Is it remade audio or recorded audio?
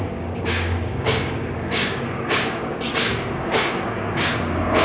remade